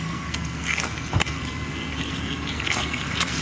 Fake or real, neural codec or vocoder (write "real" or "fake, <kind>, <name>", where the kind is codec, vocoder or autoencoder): fake, codec, SNAC